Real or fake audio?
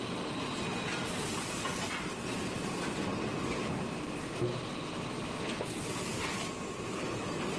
real